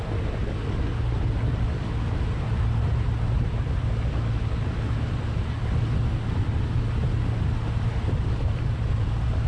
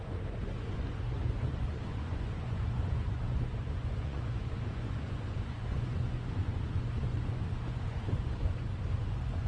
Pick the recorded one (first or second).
first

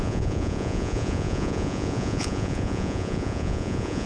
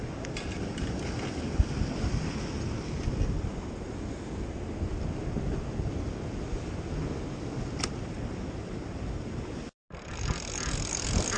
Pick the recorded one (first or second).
second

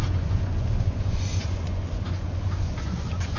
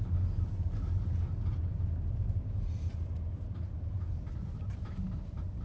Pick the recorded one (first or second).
second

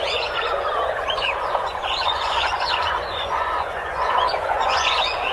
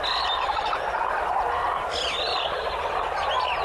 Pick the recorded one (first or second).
second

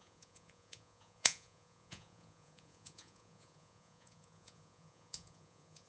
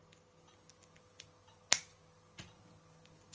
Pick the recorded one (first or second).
second